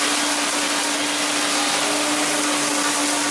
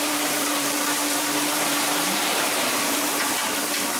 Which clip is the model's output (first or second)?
second